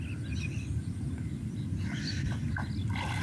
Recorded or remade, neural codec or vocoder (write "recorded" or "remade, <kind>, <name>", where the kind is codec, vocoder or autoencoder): recorded